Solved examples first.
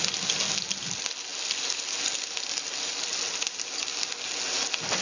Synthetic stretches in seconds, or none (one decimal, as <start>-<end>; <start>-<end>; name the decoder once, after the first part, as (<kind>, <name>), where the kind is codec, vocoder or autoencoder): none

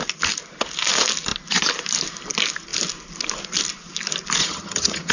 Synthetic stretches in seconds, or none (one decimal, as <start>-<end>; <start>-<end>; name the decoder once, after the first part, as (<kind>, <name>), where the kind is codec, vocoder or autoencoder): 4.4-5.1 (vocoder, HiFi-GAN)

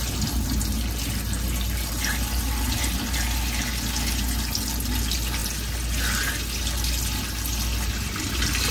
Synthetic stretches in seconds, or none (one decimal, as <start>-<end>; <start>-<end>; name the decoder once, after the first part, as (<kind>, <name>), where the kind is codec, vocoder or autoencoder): none

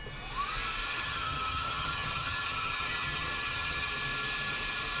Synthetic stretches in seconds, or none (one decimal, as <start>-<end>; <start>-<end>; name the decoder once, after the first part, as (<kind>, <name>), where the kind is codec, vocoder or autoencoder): 0.9-3.9 (vocoder, HiFi-GAN)

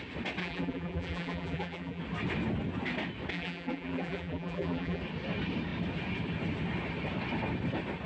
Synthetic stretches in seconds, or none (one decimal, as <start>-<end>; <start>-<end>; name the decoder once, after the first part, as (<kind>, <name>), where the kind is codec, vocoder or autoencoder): 0.4-2.0 (vocoder, BigVGAN v2); 3.3-5.0